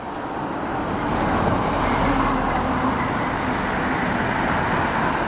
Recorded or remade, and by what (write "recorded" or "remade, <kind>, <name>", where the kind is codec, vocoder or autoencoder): recorded